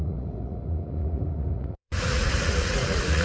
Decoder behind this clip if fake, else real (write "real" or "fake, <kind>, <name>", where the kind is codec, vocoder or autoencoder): fake, vocoder, Vocos